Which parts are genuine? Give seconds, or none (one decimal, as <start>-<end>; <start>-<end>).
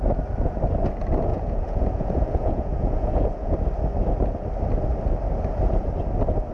0.0-1.3; 3.5-6.5